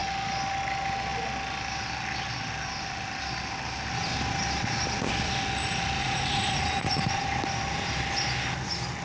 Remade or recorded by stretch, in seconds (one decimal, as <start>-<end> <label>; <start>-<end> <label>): 0.0-6.0 recorded; 6.0-7.0 remade; 7.0-9.0 recorded